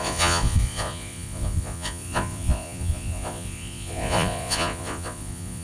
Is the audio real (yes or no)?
no